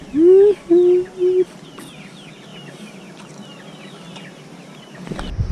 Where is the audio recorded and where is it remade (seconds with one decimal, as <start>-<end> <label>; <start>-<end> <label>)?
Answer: 0.0-2.5 recorded; 2.5-5.5 remade